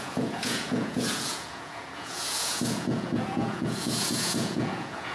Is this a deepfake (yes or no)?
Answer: yes